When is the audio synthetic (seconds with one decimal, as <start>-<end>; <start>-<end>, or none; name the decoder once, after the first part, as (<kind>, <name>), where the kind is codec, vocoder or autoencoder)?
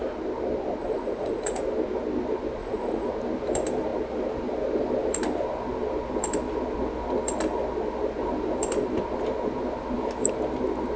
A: 0.8-1.6 (vocoder, Vocos); 2.6-3.1